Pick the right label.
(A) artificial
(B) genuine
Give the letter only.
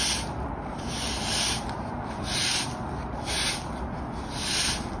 B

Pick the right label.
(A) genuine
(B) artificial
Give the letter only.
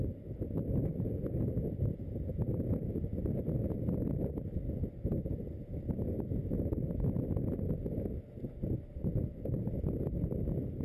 A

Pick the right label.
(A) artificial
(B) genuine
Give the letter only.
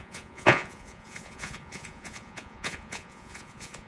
A